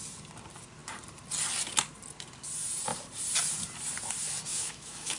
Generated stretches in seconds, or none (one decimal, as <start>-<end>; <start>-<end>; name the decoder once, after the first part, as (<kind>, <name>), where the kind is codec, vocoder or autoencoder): 4.5-5.2 (autoencoder, DAC-VAE)